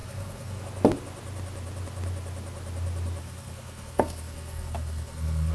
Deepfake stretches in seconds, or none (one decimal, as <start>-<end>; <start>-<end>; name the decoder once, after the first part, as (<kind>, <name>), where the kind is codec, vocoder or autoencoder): 0.0-0.6 (codec, SNAC); 3.2-5.5